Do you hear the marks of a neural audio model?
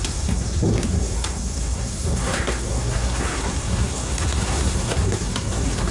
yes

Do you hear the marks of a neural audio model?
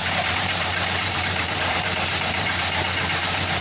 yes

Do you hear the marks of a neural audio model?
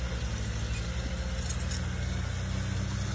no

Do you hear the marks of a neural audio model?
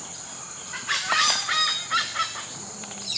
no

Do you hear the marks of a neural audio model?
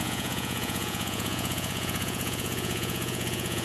yes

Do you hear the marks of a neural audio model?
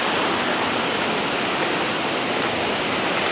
no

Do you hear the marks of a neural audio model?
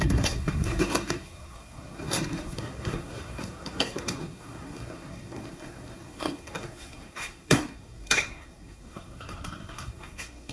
yes